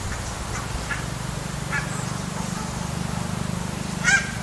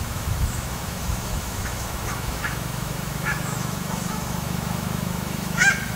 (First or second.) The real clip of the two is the first